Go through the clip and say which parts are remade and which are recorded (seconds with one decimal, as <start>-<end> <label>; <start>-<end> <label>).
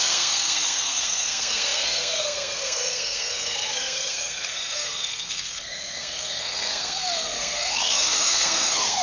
0.0-9.0 remade